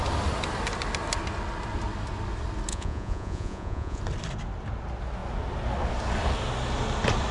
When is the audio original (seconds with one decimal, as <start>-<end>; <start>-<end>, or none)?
0.0-2.7; 4.0-7.3